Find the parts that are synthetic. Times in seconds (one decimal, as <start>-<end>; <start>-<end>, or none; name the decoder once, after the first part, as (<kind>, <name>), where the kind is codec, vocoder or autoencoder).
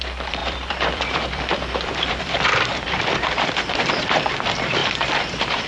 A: 0.0-5.7 (vocoder, BigVGAN v2)